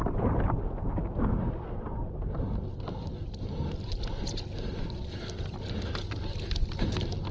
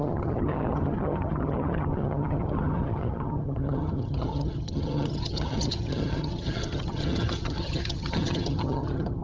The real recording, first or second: first